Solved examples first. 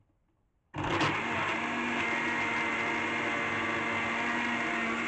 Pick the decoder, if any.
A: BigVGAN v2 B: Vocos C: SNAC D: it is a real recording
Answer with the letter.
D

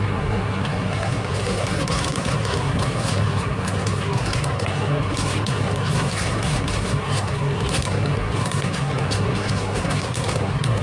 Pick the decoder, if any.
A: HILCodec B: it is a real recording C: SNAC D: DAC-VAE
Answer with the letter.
C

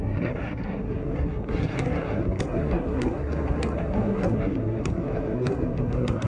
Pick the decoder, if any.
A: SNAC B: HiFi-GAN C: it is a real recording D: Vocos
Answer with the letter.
A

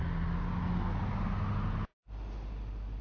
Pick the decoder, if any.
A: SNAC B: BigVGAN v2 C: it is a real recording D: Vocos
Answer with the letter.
C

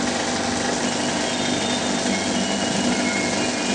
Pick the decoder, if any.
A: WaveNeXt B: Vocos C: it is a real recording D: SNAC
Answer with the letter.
C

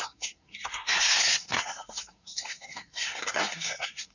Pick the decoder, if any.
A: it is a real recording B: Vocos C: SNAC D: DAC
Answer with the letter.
C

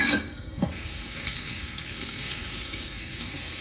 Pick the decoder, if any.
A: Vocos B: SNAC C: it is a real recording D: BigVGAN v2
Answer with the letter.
B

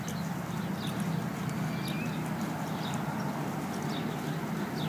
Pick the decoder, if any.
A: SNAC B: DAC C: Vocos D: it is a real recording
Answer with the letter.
D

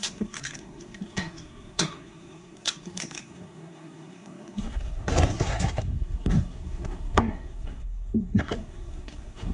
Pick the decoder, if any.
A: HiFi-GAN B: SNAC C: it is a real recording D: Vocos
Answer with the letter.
B